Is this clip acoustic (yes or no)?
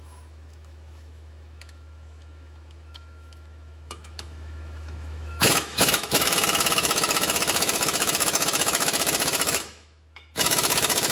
no